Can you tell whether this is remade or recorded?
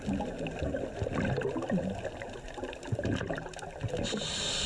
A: recorded